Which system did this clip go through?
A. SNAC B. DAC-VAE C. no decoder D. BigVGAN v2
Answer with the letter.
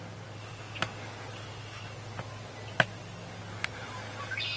C